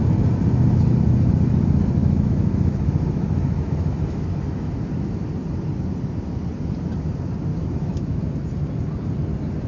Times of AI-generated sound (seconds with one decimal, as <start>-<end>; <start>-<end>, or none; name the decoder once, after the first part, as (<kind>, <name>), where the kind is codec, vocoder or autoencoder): 2.0-4.8 (autoencoder, DAC-VAE); 7.5-8.2